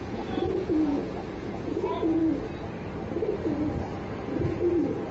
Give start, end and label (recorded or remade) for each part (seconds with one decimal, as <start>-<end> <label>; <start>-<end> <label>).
0.0-2.2 remade; 2.2-4.5 recorded; 4.5-5.1 remade